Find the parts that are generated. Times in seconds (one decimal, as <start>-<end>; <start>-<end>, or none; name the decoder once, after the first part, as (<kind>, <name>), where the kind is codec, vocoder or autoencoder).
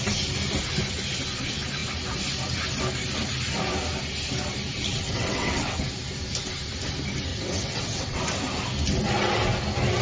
4.9-5.8 (vocoder, WaveNeXt); 7.3-8.2